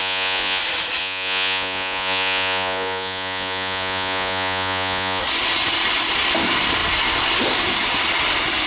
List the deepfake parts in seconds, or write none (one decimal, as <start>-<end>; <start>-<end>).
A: 0.0-0.6; 1.0-5.2